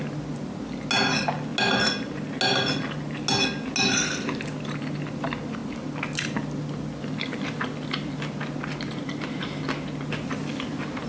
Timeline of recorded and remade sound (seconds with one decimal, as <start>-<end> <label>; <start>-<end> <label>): 0.0-11.1 recorded